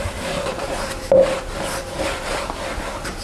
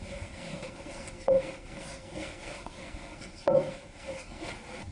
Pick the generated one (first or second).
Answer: second